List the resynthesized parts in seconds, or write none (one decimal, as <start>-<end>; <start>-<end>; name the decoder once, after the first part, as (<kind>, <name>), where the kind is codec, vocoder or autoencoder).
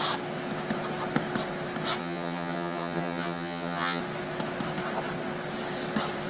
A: 2.0-4.0 (vocoder, HiFi-GAN)